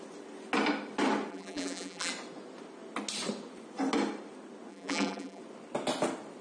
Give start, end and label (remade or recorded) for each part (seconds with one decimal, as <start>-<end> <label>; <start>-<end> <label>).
0.0-1.3 recorded; 1.3-2.1 remade; 2.1-4.7 recorded; 4.7-5.4 remade; 5.4-6.4 recorded